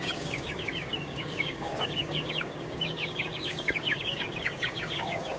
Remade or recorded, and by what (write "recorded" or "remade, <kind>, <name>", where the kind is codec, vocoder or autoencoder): remade, codec, DAC